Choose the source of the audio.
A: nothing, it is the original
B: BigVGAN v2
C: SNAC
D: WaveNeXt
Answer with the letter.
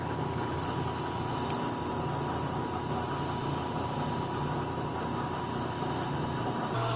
A